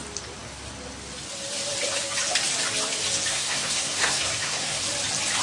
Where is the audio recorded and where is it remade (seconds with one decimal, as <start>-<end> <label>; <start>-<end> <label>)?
0.0-3.3 recorded; 3.3-4.8 remade; 4.8-5.4 recorded